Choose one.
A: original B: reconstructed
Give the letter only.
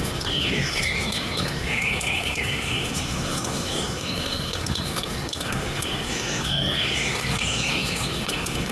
B